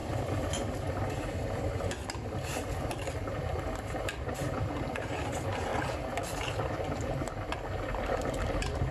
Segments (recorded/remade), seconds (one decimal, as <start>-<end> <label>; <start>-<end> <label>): 0.0-4.8 recorded; 4.8-5.7 remade; 5.7-8.5 recorded; 8.5-8.9 remade

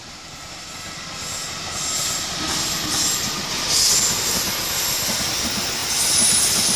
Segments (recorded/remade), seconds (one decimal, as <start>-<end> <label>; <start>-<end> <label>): 0.0-6.8 recorded

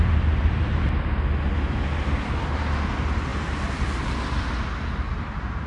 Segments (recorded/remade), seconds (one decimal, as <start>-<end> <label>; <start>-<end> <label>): 0.0-5.7 recorded

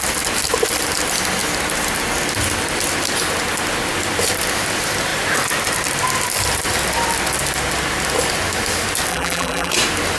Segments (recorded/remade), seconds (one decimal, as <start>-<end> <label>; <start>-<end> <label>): 0.0-9.1 recorded; 9.1-9.7 remade; 9.7-10.2 recorded